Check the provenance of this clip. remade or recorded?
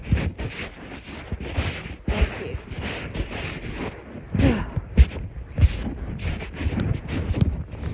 recorded